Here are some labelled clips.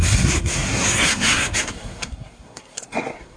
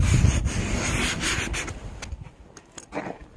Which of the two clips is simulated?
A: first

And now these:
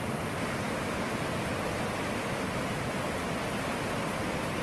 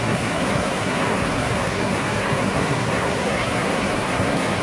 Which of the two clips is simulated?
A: second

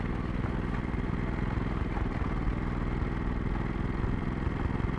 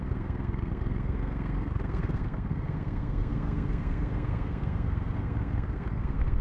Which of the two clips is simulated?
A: second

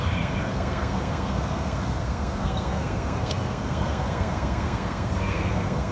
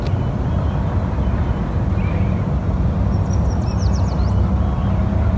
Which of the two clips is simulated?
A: first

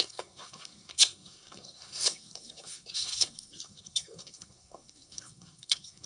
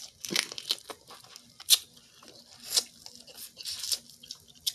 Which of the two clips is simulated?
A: first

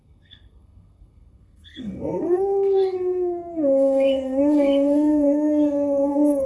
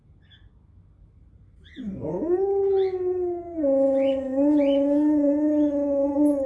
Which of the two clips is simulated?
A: first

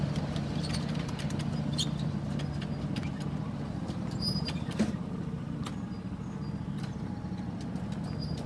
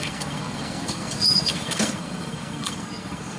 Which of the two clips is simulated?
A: second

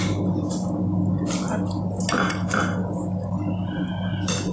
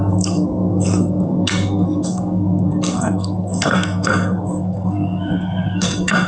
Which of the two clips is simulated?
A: second